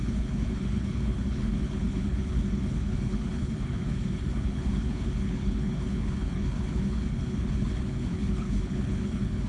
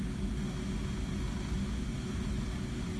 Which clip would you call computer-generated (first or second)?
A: first